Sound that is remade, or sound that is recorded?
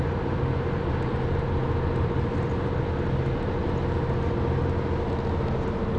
recorded